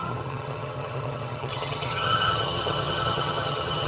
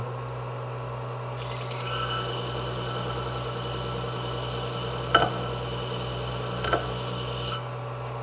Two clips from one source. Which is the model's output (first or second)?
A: first